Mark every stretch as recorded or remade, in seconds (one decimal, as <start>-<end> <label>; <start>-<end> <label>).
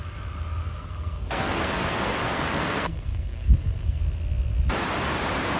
0.0-0.6 recorded; 0.6-4.0 remade; 4.0-5.6 recorded